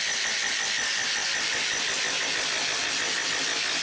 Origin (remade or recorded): recorded